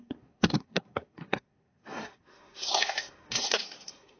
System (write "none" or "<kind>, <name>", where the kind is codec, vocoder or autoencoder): codec, SNAC